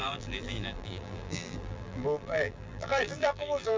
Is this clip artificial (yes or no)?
yes